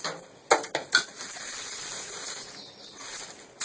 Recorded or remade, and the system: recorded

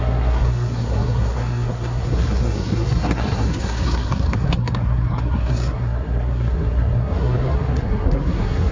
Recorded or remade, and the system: remade, codec, SNAC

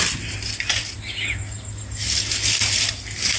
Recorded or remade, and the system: recorded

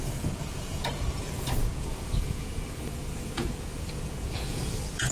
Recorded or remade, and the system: remade, vocoder, Vocos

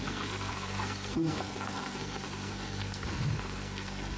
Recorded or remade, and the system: remade, codec, SNAC